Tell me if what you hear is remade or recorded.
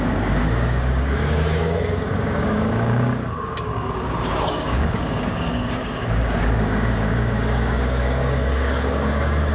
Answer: remade